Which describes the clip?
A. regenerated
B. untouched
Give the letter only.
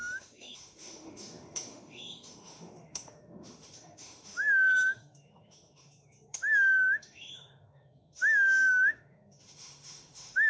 A